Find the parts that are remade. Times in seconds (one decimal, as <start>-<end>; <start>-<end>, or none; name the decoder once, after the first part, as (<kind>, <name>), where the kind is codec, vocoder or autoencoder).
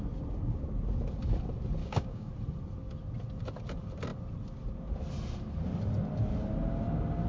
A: 1.8-2.3 (codec, DAC)